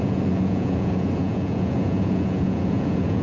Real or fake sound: fake